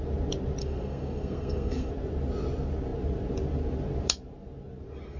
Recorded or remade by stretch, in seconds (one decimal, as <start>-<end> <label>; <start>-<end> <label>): 0.0-0.6 recorded; 0.6-1.9 remade; 1.9-5.2 recorded